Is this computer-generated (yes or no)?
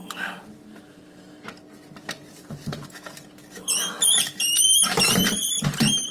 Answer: no